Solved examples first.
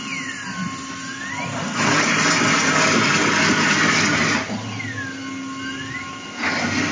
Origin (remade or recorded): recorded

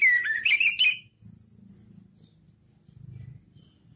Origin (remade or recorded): recorded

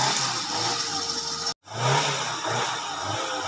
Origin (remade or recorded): recorded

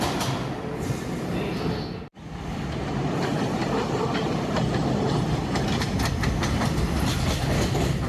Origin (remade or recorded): recorded